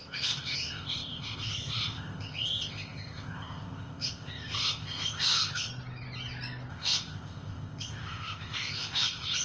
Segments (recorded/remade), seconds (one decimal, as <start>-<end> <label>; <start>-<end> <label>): 0.0-5.7 remade; 5.7-6.7 recorded; 6.7-9.4 remade

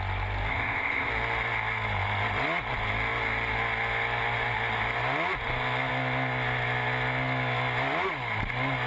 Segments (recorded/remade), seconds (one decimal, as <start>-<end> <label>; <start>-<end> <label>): 0.0-0.5 recorded; 0.5-1.1 remade; 1.1-8.9 recorded

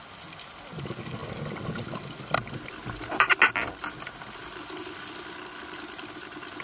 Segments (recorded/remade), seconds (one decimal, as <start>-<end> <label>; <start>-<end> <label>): 0.0-6.6 recorded

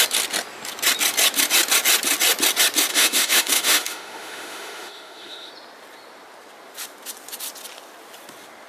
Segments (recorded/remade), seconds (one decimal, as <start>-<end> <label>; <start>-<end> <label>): 0.0-2.9 recorded; 2.9-5.5 remade; 5.5-8.7 recorded

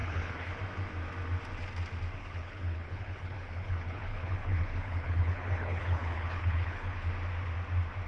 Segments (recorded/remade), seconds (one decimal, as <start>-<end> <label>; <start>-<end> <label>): 0.0-0.6 remade; 0.6-2.2 recorded; 2.2-7.1 remade; 7.1-8.1 recorded

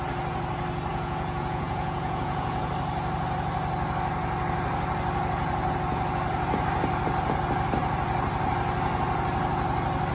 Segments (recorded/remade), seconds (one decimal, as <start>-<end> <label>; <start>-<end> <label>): 0.0-0.9 recorded; 0.9-2.7 remade; 2.7-10.1 recorded

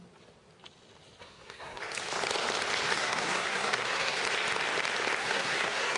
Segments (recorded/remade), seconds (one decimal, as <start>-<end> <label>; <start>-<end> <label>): 0.0-1.2 recorded; 1.2-1.8 remade; 1.8-2.9 recorded; 2.9-4.2 remade; 4.2-5.2 recorded; 5.2-6.0 remade

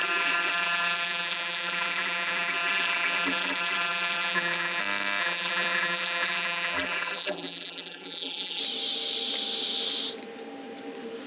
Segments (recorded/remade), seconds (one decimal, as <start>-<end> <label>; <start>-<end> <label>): 0.0-4.8 remade; 4.8-5.2 recorded; 5.2-8.6 remade; 8.6-11.3 recorded